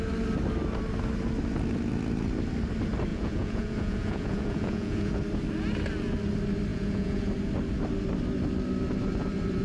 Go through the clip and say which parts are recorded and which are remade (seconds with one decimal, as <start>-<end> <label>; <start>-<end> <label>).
0.0-3.1 recorded; 3.1-5.2 remade; 5.2-6.7 recorded; 6.7-7.3 remade; 7.3-9.6 recorded